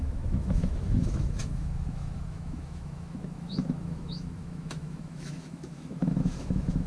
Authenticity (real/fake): fake